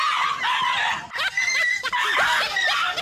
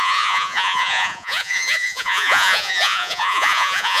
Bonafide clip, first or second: first